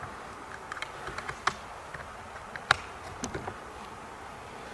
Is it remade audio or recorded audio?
recorded